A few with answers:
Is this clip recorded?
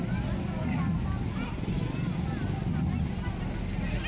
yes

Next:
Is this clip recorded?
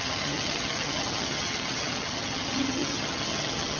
no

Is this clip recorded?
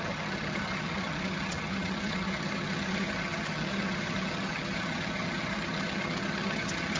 no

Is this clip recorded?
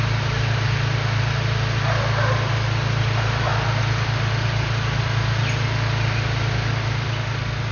yes